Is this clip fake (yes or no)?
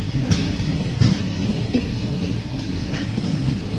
yes